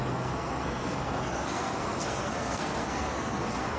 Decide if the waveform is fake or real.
fake